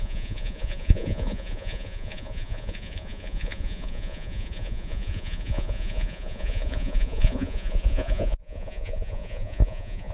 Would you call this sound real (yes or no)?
no